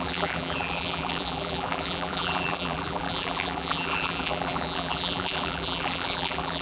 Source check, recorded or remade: remade